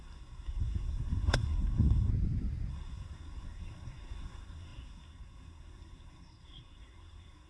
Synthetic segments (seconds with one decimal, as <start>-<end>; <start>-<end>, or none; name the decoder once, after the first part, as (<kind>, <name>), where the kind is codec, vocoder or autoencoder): 0.0-2.1 (codec, SNAC); 2.7-7.5